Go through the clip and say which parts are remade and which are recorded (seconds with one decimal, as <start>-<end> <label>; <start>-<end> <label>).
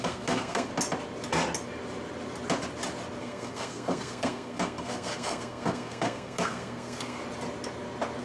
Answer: 0.0-0.7 remade; 0.7-3.2 recorded; 3.2-7.2 remade; 7.2-8.2 recorded